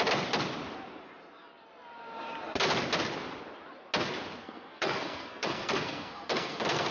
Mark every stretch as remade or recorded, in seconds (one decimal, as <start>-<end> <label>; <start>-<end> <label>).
0.0-4.4 recorded; 4.4-6.9 remade